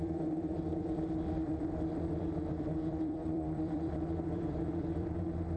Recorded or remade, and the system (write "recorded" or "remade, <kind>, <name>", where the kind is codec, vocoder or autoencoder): remade, vocoder, BigVGAN v2